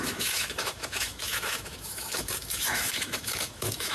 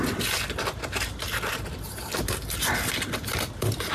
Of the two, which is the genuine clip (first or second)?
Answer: second